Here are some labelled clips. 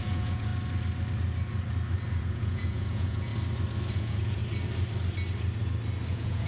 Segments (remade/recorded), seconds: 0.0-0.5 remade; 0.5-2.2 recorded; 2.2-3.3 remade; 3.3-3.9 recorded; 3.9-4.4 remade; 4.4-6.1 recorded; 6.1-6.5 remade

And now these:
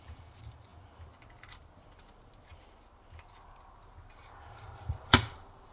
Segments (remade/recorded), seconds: 0.0-0.7 remade; 0.7-4.1 recorded; 4.1-5.7 remade

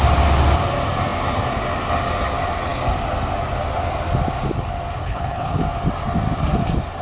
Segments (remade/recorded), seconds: 0.0-5.0 recorded; 5.0-5.6 remade; 5.6-7.0 recorded

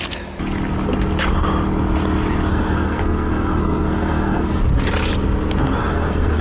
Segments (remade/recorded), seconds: 0.0-2.5 recorded; 2.5-4.6 remade; 4.6-5.8 recorded; 5.8-6.4 remade